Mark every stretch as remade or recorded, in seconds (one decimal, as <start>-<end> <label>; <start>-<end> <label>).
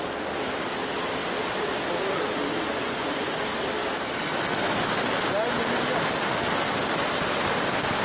0.0-2.7 recorded; 2.7-3.4 remade; 3.4-8.0 recorded